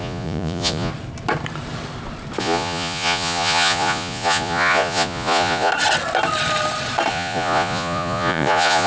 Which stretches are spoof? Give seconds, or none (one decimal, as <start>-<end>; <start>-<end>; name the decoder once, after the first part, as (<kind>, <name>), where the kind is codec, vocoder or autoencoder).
0.0-0.9 (vocoder, Vocos); 2.4-5.7; 7.1-8.9